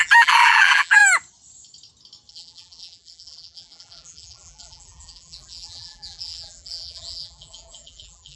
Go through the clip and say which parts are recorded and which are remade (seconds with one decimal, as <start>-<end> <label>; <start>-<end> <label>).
0.0-1.0 remade; 1.0-2.3 recorded; 2.3-8.4 remade